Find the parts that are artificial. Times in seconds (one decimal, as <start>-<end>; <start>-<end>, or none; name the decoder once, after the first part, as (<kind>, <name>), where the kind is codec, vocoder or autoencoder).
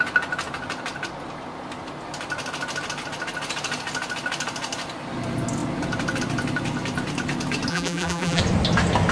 7.7-8.4 (vocoder, BigVGAN v2)